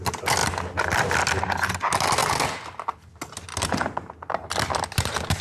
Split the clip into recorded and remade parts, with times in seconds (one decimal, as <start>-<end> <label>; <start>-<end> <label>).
0.0-5.4 recorded